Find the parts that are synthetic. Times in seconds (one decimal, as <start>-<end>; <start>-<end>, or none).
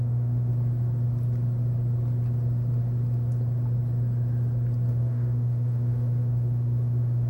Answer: 0.0-0.5; 4.9-7.3